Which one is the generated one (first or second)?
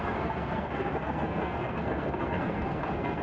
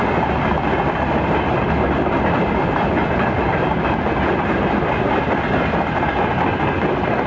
first